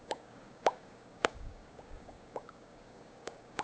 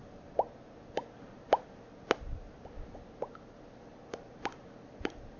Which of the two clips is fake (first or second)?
first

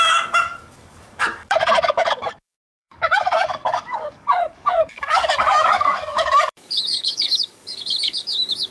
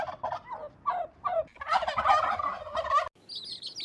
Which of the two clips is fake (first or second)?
first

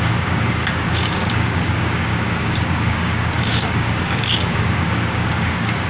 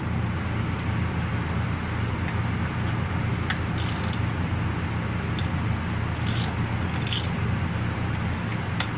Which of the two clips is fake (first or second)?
first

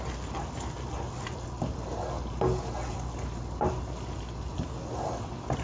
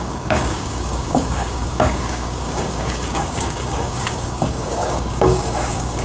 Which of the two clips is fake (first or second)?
second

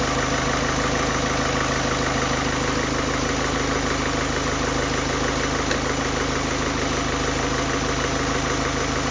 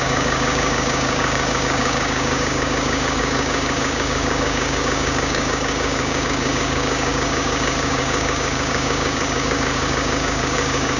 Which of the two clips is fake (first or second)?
second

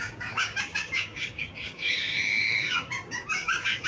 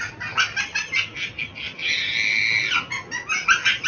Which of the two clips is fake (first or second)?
first